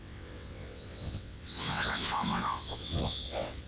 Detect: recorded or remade remade